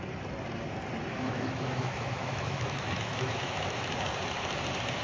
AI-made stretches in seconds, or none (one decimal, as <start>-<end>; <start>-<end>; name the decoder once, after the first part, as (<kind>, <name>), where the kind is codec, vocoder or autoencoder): 1.1-3.9 (autoencoder, DAC-VAE)